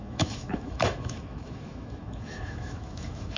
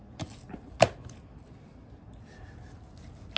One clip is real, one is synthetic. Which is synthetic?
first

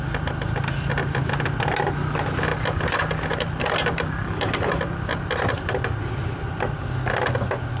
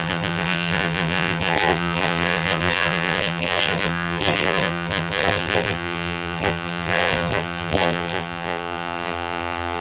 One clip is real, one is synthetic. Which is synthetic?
second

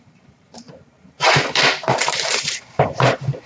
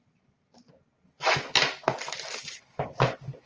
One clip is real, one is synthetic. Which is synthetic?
first